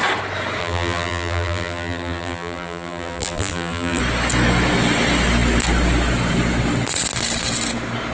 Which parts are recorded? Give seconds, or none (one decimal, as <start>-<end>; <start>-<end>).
0.0-0.6; 4.0-8.1